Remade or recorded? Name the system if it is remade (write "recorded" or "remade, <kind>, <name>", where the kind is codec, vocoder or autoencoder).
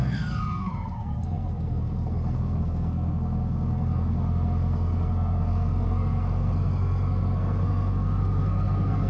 remade, codec, SNAC